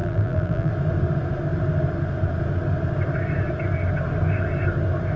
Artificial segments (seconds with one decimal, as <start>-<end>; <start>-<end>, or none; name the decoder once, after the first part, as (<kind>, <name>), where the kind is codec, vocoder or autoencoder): 0.0-0.7 (vocoder, BigVGAN v2)